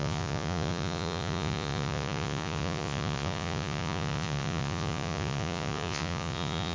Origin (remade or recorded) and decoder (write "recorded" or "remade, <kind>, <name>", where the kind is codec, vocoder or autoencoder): remade, vocoder, Vocos